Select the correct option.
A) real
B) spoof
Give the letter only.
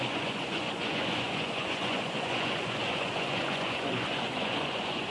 B